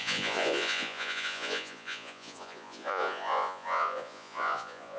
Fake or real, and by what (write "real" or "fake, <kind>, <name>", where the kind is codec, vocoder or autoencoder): fake, vocoder, Vocos